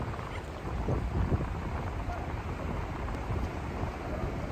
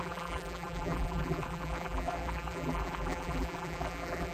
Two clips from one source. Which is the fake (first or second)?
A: second